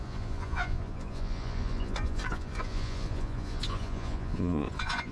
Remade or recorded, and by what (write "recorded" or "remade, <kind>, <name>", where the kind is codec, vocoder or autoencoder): remade, vocoder, Vocos